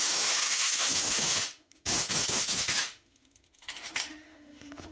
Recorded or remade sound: remade